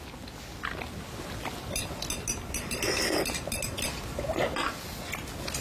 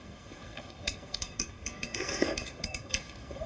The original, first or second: first